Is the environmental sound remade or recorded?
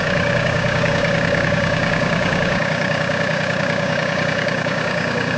remade